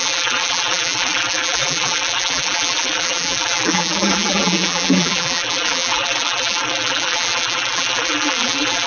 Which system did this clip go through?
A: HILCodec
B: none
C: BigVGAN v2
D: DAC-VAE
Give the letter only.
C